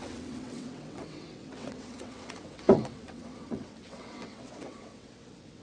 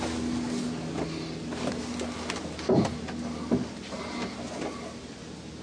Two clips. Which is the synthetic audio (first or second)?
first